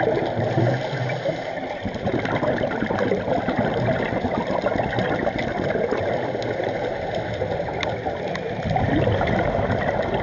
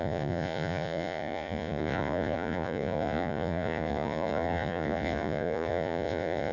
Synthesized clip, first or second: second